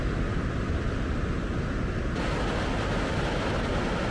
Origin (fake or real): real